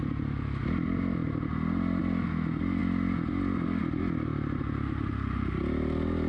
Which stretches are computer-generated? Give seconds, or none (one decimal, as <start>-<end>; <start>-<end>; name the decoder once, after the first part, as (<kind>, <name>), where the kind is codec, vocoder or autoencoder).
none